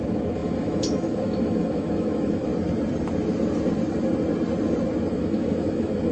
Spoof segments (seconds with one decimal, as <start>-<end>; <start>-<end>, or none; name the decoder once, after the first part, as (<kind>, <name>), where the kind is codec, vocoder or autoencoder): 0.0-2.5 (autoencoder, DAC-VAE); 5.1-6.1